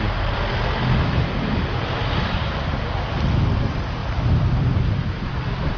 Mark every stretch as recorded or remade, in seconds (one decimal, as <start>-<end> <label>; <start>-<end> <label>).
0.0-4.0 recorded; 4.0-5.3 remade; 5.3-5.8 recorded